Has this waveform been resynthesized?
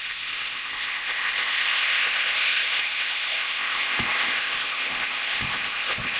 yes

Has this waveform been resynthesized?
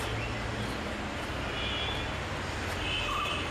no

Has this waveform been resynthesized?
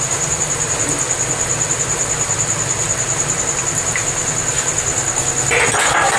no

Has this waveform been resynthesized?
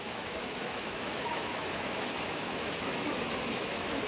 yes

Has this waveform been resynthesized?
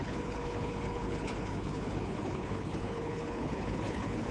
yes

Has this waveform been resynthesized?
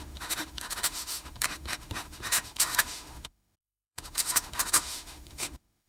yes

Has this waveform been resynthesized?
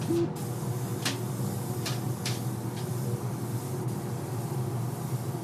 no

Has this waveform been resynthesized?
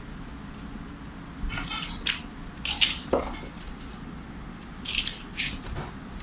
no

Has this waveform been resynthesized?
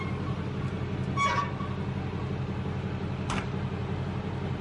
no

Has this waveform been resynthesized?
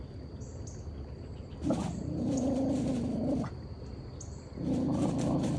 no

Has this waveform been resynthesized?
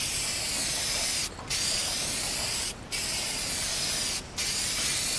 no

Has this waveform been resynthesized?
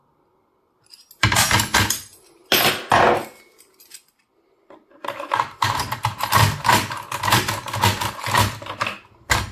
no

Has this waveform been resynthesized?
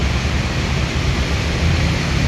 no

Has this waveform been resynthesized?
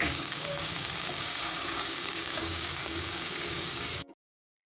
yes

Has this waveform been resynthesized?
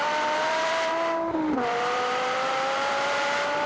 yes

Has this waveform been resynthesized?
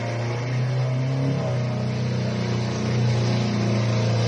no